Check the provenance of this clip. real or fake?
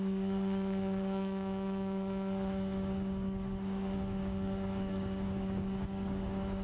fake